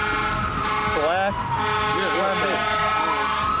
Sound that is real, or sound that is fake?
real